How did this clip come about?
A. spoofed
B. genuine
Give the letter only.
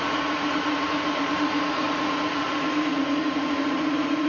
A